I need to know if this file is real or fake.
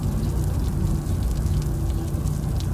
real